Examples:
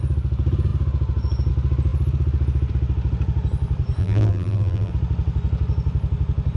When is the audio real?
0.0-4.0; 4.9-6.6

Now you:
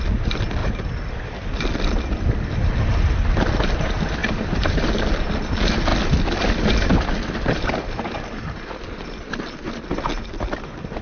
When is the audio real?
0.0-0.6; 1.1-4.2; 4.9-11.0

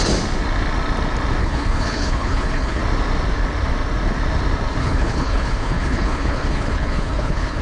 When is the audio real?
0.0-1.4; 2.8-4.8

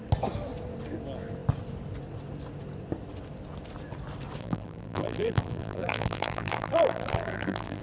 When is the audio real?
0.0-4.4